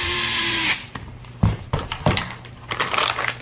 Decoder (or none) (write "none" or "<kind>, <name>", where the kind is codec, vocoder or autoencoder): vocoder, BigVGAN v2